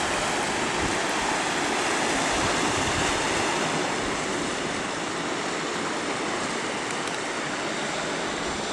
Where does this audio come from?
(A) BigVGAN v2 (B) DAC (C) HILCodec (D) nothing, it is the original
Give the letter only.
D